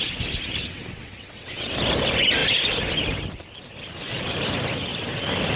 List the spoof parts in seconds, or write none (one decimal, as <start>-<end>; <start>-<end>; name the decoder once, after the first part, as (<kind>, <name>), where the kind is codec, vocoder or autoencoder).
0.6-1.7 (vocoder, WaveNeXt)